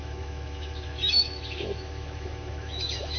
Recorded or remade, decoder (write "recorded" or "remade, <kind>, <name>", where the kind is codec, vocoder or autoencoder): remade, autoencoder, DAC-VAE